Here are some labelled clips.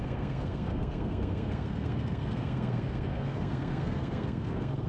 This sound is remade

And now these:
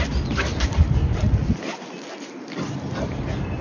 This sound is recorded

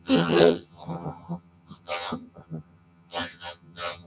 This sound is remade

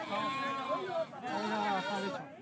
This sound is recorded